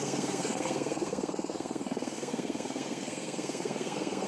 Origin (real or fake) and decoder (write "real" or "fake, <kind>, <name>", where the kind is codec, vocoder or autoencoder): fake, codec, SNAC